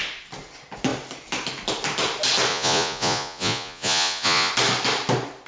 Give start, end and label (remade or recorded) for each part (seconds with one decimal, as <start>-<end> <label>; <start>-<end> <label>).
0.0-2.5 recorded; 2.5-4.5 remade; 4.5-5.5 recorded